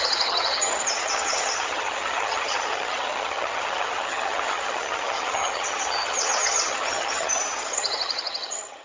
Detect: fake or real fake